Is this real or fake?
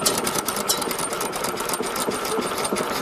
real